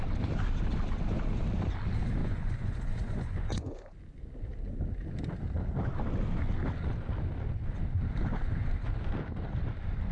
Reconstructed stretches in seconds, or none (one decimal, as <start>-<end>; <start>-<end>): 2.2-3.8